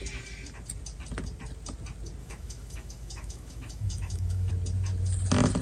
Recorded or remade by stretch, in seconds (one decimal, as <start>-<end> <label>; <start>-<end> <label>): 0.0-2.2 recorded; 2.2-4.5 remade; 4.5-5.6 recorded